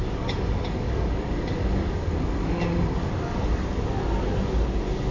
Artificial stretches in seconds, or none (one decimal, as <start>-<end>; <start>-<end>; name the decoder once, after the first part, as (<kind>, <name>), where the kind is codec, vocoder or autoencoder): 0.0-3.1 (codec, DAC)